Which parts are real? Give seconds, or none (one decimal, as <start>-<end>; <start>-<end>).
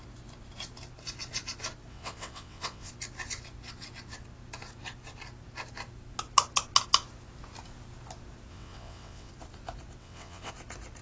0.0-1.9; 2.9-8.5; 9.3-10.0; 10.5-11.0